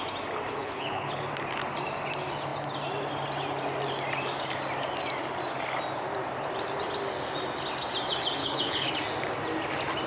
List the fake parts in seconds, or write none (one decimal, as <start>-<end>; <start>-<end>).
0.6-1.2; 8.4-8.9